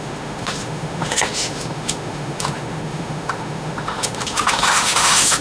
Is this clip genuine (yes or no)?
no